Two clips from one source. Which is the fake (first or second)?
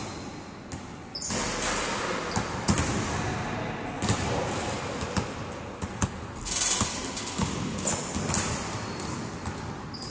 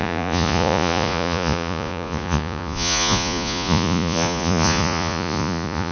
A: second